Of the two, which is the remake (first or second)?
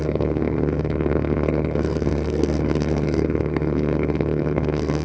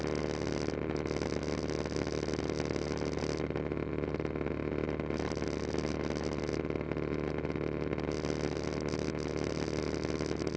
first